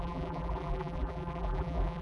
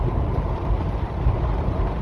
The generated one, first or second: first